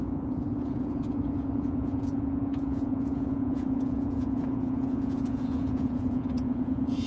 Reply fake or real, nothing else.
fake